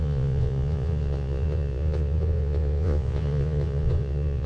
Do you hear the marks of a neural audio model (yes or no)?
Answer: yes